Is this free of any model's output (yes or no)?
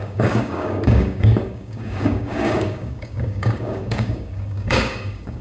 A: no